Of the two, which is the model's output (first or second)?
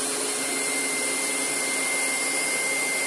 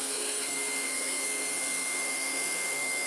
second